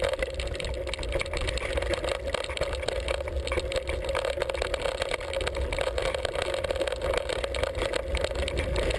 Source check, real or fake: real